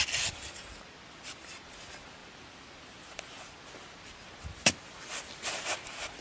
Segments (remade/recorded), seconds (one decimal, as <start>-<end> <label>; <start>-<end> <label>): 0.0-2.2 recorded; 2.2-3.6 remade; 3.6-6.2 recorded